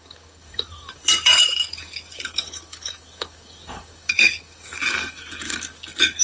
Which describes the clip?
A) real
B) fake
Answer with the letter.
B